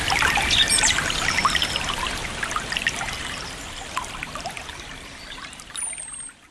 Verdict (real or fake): real